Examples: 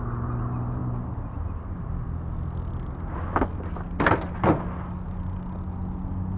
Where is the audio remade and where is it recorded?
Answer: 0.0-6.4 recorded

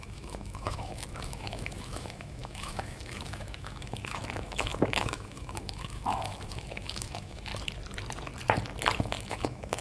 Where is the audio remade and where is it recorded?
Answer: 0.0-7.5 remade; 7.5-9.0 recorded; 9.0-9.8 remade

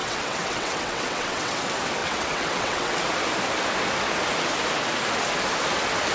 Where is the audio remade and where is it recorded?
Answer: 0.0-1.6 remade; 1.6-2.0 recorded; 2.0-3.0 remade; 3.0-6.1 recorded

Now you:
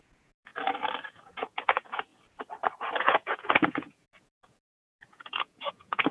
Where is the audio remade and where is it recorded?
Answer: 0.0-0.5 remade; 0.5-1.1 recorded; 1.1-2.1 remade; 2.1-3.0 recorded; 3.0-6.1 remade